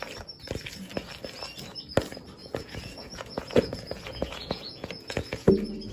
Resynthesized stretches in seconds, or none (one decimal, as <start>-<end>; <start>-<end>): 2.4-5.5